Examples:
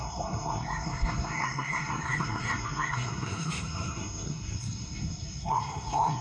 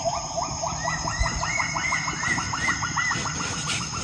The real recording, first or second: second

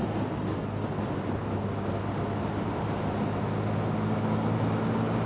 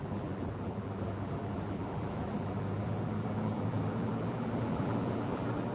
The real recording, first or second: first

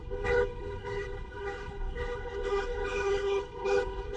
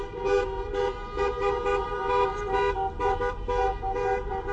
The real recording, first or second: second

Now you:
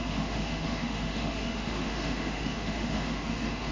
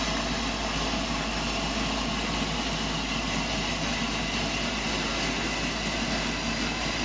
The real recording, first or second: second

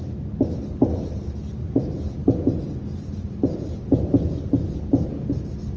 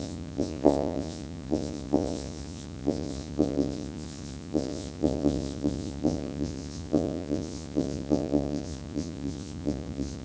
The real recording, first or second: first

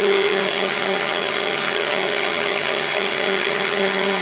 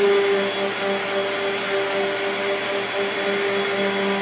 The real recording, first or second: second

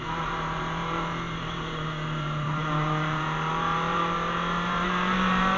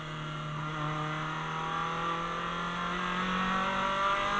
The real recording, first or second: second